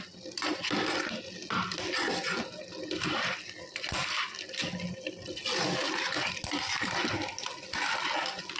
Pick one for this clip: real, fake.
real